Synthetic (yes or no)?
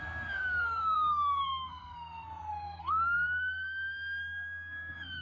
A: yes